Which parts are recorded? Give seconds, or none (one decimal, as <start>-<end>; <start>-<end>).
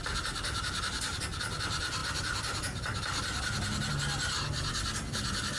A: 0.0-5.6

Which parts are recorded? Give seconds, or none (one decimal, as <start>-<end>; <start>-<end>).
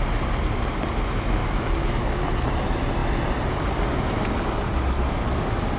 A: 0.0-1.4; 2.2-5.8